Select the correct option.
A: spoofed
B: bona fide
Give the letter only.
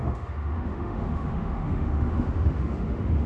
A